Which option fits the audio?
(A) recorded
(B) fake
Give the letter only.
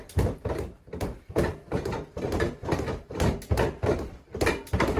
A